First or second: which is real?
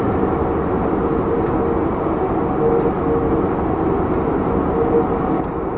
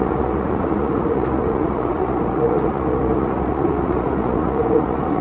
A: first